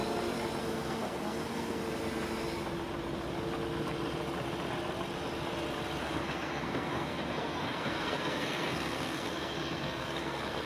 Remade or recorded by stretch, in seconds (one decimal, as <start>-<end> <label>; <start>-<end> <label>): 0.0-0.6 recorded; 0.6-1.8 remade; 1.8-6.0 recorded; 6.0-10.7 remade